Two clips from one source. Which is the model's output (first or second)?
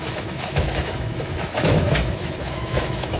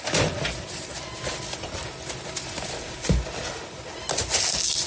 first